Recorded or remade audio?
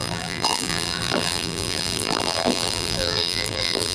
remade